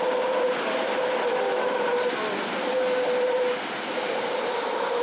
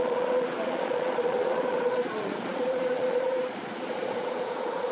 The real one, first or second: first